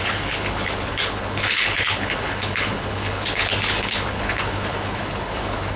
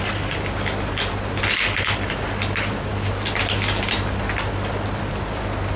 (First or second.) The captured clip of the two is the second